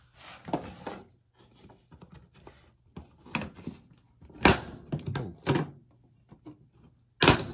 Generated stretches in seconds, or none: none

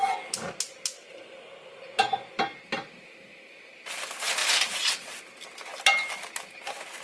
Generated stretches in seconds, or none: 1.0-1.8 (vocoder, BigVGAN v2); 4.4-5.2

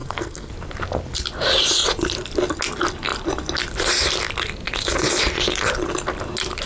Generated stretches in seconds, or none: 0.0-0.5 (codec, SNAC)

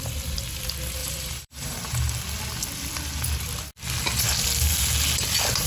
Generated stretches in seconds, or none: 1.0-2.1 (vocoder, BigVGAN v2)

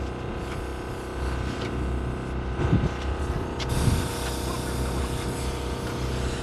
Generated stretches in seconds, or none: none

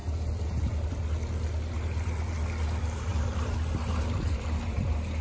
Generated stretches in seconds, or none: 3.1-4.8 (vocoder, BigVGAN v2)

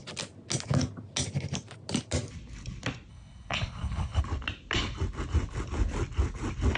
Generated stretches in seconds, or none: 3.1-4.2 (codec, HILCodec)

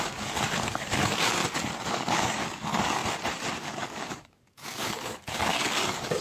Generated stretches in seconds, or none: 0.0-1.4 (codec, DAC); 1.9-3.0; 3.6-6.2